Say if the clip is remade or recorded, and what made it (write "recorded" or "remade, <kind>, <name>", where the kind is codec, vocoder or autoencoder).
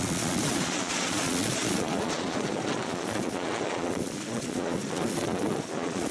remade, vocoder, Vocos